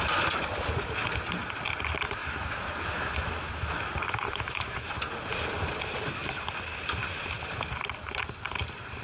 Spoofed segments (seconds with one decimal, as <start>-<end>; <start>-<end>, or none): 2.2-4.9